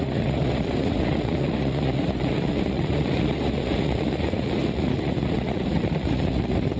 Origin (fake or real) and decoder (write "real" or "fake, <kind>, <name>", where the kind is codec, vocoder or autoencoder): fake, vocoder, Vocos